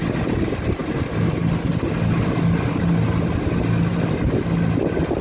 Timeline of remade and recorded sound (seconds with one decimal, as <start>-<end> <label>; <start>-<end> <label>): 0.0-5.2 recorded